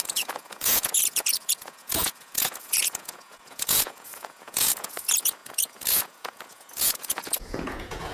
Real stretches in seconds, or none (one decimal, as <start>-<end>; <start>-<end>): none